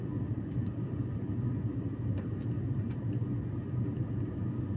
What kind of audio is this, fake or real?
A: real